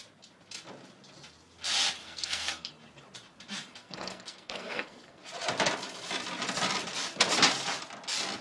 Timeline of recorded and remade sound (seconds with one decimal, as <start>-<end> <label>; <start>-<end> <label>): 0.0-2.0 recorded; 2.0-2.7 remade; 2.7-3.8 recorded; 3.8-5.2 remade; 5.2-8.4 recorded